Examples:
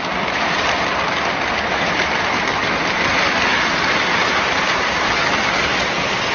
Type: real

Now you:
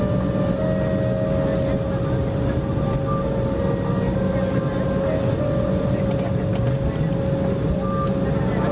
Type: real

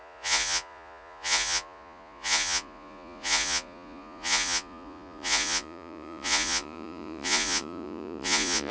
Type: fake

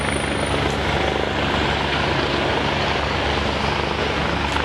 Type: real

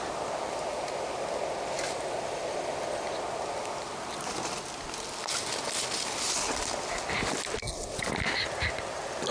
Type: real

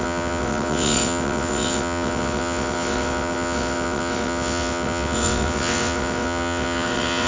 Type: fake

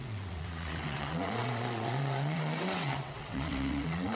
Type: fake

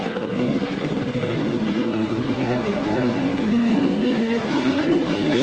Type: fake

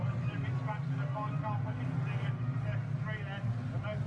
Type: real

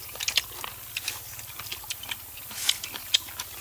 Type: real